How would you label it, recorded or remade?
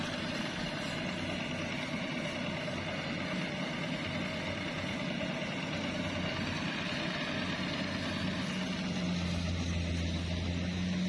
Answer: recorded